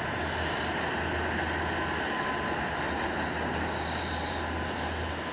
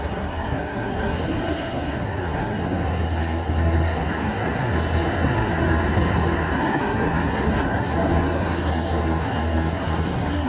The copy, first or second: second